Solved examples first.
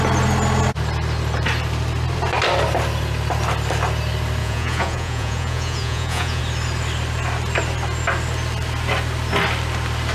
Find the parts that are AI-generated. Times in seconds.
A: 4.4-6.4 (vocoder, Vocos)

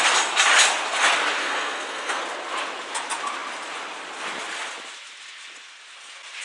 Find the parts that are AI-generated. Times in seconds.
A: 1.4-2.2 (codec, SNAC)

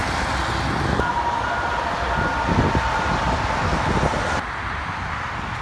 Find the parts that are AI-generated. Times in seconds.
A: none

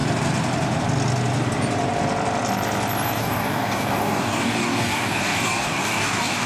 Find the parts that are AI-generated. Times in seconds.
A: 3.2-6.5 (codec, DAC)

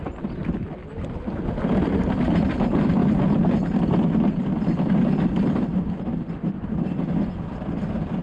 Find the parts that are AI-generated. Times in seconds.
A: 0.0-0.8 (vocoder, BigVGAN v2); 1.5-3.0; 7.7-8.2

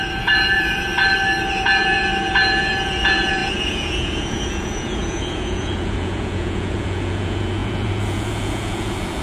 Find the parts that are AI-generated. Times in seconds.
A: 0.0-0.9 (vocoder, Vocos); 1.5-9.2

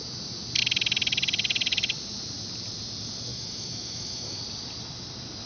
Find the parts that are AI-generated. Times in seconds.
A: 3.3-4.4 (autoencoder, DAC-VAE)